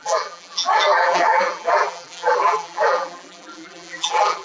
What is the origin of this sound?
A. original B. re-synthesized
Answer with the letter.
B